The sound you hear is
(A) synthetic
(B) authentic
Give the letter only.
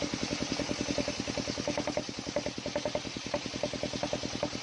B